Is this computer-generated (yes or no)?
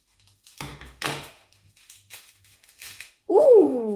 yes